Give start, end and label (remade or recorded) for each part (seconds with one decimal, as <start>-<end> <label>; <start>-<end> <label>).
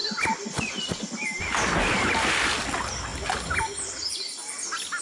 0.0-5.0 recorded